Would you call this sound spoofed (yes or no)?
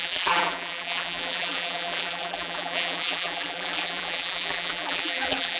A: yes